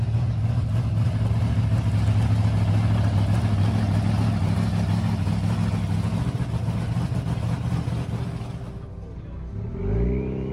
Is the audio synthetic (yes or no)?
no